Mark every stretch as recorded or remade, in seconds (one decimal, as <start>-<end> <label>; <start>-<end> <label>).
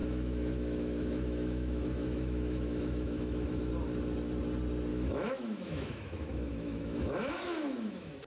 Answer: 0.0-3.7 remade; 3.7-4.9 recorded; 4.9-8.3 remade